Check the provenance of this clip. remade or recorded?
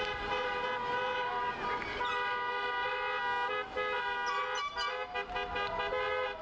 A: recorded